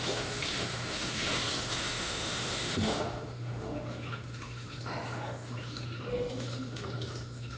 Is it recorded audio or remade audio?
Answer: remade